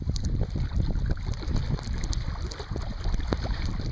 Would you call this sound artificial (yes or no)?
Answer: no